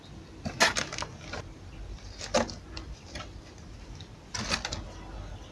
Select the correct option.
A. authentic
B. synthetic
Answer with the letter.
A